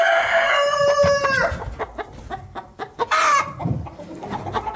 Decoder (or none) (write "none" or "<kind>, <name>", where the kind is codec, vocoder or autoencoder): none